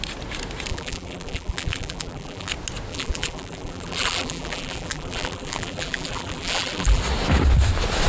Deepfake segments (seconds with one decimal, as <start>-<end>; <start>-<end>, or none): 0.7-2.5; 2.9-7.0